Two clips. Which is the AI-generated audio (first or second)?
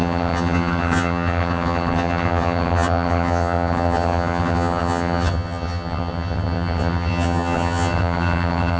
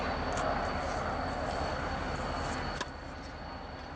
first